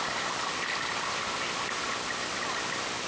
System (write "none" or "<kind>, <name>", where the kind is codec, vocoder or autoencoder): none